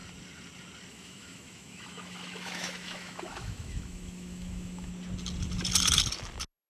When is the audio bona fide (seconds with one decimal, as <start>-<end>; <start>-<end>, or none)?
0.0-0.9; 4.9-6.7